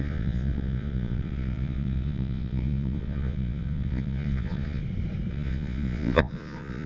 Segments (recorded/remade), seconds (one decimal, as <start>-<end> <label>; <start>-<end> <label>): 0.0-4.8 remade; 4.8-5.3 recorded; 5.3-6.9 remade